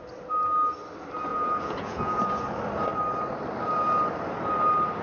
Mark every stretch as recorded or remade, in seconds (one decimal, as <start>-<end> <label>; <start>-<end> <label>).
0.0-1.3 recorded; 1.3-2.2 remade; 2.2-5.0 recorded